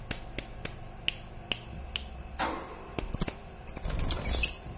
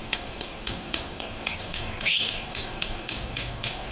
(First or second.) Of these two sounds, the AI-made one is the second